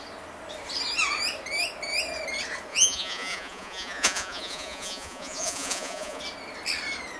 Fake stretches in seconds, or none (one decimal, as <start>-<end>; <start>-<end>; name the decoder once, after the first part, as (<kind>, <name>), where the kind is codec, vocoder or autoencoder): 2.7-6.2 (vocoder, Vocos)